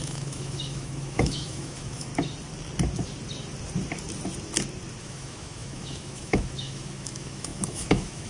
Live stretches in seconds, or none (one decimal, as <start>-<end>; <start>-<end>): 2.1-5.0